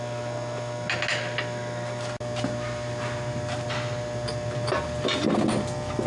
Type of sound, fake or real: real